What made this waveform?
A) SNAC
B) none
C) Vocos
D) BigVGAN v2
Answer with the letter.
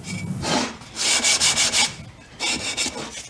B